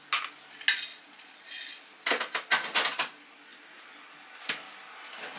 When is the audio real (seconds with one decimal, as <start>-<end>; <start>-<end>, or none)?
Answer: 0.0-0.9; 1.8-5.4